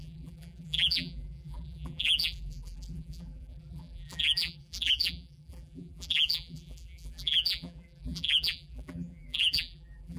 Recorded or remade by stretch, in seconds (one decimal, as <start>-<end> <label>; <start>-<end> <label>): 0.0-10.2 remade